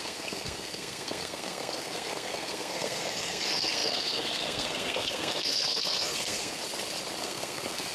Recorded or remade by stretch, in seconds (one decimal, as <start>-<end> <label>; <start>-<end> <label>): 0.0-6.6 remade; 6.6-7.2 recorded; 7.2-7.9 remade